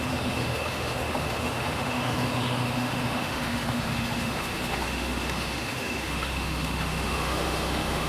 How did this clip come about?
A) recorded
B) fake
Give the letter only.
B